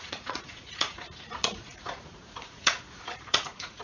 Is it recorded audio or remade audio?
remade